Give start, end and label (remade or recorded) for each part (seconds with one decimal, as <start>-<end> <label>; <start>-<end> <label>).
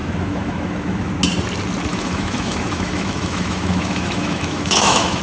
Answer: 0.0-1.1 remade; 1.1-1.9 recorded; 1.9-5.2 remade